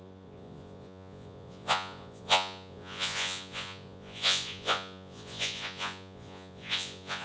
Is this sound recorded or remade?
remade